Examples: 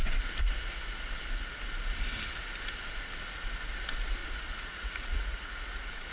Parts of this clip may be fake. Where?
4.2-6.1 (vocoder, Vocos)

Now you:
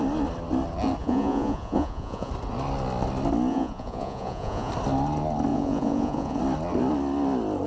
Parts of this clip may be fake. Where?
1.0-2.3 (vocoder, Vocos); 3.5-4.7; 5.5-6.4

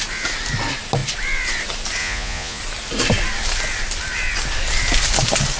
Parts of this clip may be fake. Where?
2.0-2.6 (vocoder, Vocos)